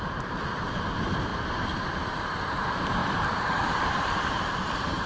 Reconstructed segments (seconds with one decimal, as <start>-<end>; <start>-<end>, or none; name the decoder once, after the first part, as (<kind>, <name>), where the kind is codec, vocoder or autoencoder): 0.0-5.1 (vocoder, BigVGAN v2)